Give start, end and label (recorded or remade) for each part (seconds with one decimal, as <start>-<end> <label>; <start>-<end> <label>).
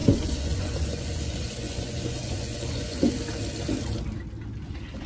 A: 0.0-3.1 remade; 3.1-5.1 recorded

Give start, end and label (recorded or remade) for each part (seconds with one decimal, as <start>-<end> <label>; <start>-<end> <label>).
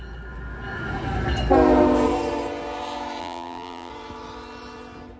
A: 0.0-3.2 recorded; 3.2-3.9 remade; 3.9-5.2 recorded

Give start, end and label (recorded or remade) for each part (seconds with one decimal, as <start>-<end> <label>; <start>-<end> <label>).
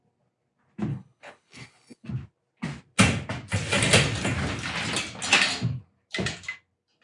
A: 0.0-0.9 recorded; 0.9-2.1 remade; 2.1-7.0 recorded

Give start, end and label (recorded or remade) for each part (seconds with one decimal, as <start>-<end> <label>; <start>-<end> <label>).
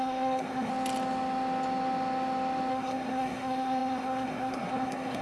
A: 0.0-0.7 remade; 0.7-2.7 recorded; 2.7-5.2 remade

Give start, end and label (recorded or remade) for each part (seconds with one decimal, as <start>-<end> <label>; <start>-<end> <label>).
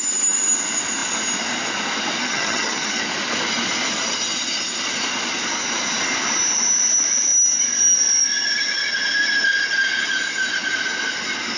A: 0.0-2.2 recorded; 2.2-3.0 remade; 3.0-11.6 recorded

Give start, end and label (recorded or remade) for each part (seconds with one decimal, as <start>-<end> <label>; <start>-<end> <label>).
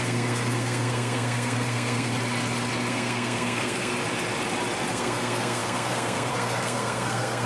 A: 0.0-2.1 remade; 2.1-2.9 recorded; 2.9-3.9 remade; 3.9-4.9 recorded; 4.9-7.5 remade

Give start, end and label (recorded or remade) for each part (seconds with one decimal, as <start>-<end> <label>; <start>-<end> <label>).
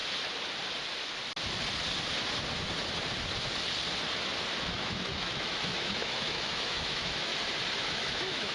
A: 0.0-4.6 recorded; 4.6-7.3 remade; 7.3-7.8 recorded; 7.8-8.5 remade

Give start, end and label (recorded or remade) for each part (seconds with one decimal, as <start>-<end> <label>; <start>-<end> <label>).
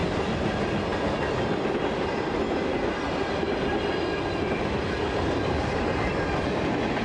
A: 0.0-7.0 recorded